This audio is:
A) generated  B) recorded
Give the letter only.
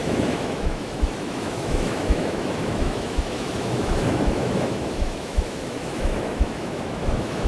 A